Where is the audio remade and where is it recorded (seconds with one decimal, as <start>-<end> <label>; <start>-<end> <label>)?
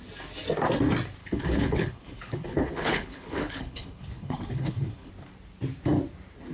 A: 0.0-1.2 recorded; 1.2-5.1 remade; 5.1-6.5 recorded